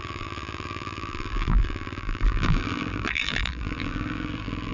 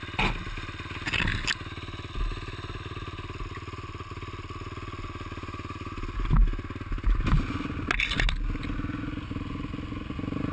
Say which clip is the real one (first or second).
second